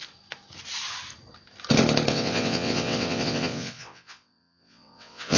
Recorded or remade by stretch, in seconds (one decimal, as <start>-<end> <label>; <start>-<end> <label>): 0.0-2.1 recorded; 2.1-5.4 remade